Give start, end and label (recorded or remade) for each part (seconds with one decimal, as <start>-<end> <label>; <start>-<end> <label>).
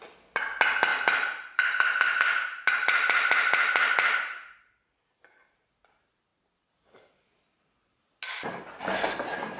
0.0-9.6 recorded